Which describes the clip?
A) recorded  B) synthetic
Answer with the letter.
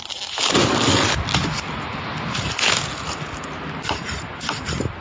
A